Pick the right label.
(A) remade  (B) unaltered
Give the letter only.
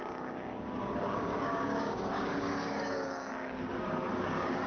A